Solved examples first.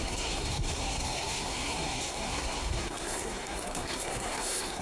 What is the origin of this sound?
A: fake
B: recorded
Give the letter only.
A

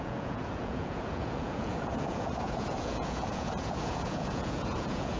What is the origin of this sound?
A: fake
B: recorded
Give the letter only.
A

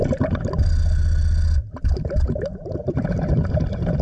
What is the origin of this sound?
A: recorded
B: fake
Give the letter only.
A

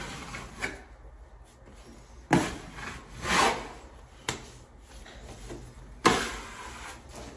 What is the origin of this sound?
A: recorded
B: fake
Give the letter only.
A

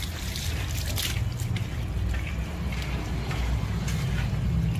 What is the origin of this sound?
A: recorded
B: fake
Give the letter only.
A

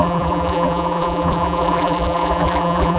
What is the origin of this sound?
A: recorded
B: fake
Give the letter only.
B